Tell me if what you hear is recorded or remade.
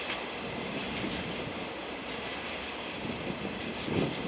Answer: recorded